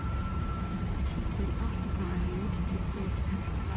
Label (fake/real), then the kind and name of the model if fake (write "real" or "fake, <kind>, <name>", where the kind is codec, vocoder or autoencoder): fake, vocoder, BigVGAN v2